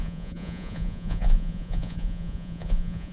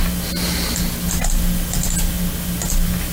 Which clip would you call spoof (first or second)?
first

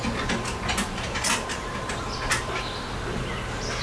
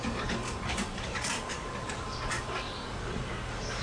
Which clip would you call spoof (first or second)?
second